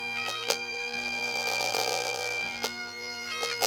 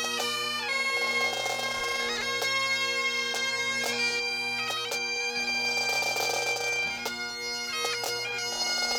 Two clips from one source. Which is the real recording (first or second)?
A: second